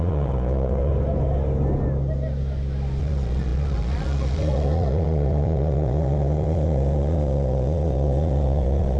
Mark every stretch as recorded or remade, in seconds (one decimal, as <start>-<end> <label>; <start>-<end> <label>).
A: 0.0-0.9 remade; 0.9-3.0 recorded; 3.0-9.0 remade